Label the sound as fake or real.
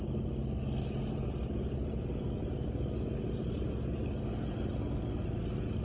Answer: real